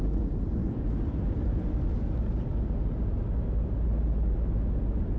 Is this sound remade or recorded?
recorded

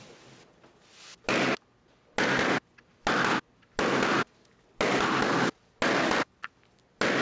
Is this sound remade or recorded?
recorded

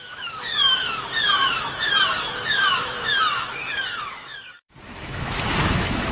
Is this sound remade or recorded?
remade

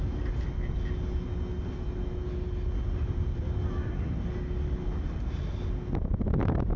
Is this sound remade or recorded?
recorded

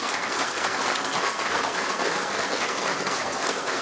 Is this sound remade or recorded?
remade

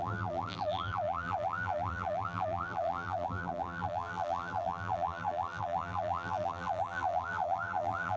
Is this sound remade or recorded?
remade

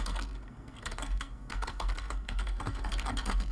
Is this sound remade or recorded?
remade